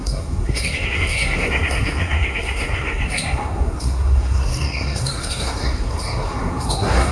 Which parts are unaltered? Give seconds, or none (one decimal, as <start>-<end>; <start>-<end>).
none